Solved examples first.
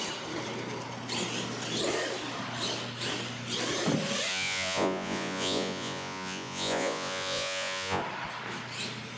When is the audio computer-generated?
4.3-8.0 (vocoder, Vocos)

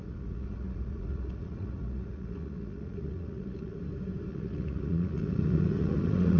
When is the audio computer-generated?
0.0-3.8 (vocoder, Vocos); 4.3-6.4

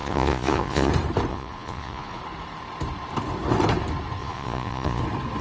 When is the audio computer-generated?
0.0-0.9 (vocoder, Vocos); 1.3-2.2; 4.2-5.0

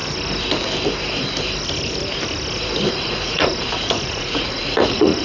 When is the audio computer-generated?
2.9-5.2 (vocoder, Vocos)

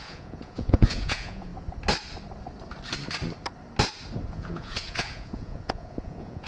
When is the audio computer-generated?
0.0-1.5 (vocoder, Vocos); 4.3-6.5

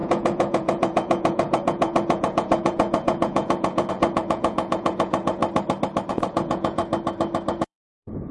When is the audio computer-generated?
0.0-5.4 (vocoder, Vocos); 6.1-6.8; 7.5-8.3

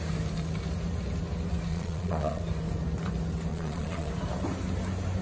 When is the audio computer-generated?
1.7-2.4 (vocoder, Vocos); 3.5-4.1

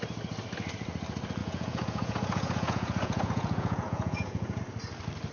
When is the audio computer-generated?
1.4-4.6 (vocoder, Vocos)